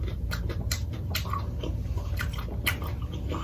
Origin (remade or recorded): recorded